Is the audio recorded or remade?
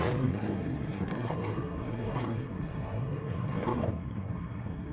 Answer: remade